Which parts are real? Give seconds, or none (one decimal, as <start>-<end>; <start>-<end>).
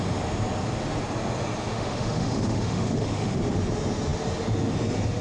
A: 0.0-1.7; 3.4-5.2